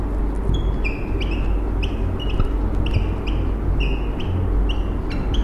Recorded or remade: recorded